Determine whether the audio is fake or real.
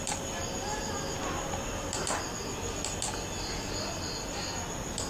real